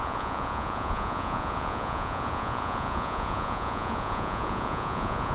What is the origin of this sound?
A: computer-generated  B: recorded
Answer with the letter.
A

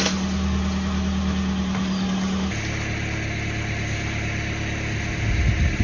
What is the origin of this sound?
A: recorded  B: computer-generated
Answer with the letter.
A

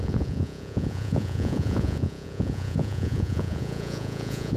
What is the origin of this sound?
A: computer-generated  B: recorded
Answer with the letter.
A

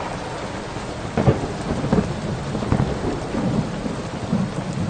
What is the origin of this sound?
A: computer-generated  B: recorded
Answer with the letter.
B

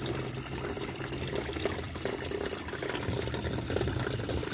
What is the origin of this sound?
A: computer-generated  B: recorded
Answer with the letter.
B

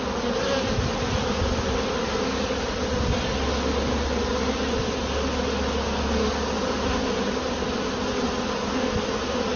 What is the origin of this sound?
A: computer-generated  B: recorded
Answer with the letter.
B